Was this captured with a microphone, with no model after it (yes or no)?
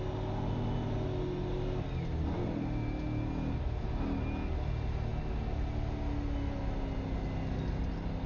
yes